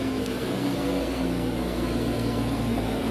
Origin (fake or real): fake